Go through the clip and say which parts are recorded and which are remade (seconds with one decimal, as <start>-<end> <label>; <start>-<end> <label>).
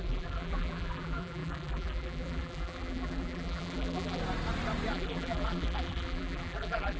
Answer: 0.0-4.2 remade; 4.2-4.9 recorded; 4.9-7.0 remade